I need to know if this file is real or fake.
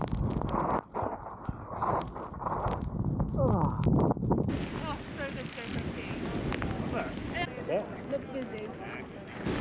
real